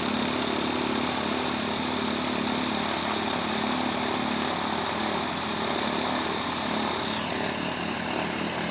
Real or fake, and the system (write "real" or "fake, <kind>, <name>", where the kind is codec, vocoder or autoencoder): real